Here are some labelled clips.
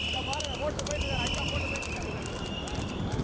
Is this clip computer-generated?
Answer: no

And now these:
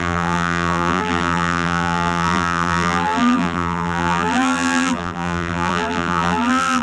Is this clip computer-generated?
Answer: yes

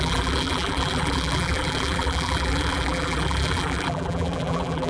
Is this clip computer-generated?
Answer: yes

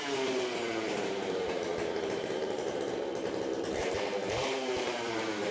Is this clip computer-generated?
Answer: yes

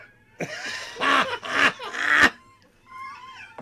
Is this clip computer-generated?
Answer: no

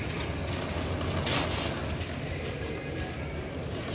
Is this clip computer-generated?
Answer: no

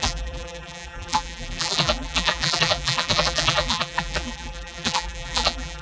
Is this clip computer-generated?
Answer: yes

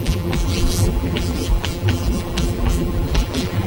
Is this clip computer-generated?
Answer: yes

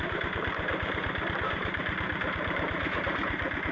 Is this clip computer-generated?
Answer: yes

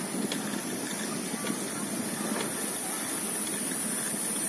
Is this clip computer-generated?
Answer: no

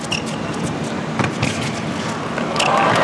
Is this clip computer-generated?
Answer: no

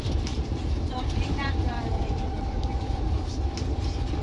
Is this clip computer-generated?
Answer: yes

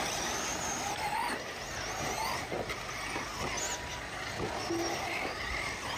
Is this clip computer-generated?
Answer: no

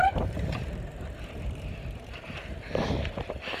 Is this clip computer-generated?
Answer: yes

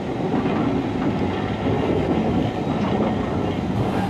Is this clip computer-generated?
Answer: no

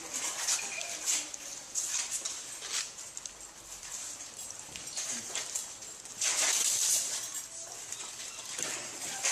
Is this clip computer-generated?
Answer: yes